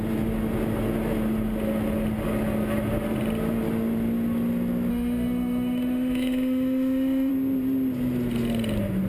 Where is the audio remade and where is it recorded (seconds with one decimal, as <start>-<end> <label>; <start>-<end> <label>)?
0.0-4.9 recorded; 4.9-7.3 remade; 7.3-9.1 recorded